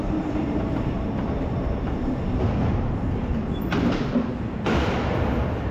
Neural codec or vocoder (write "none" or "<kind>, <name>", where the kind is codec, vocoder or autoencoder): vocoder, BigVGAN v2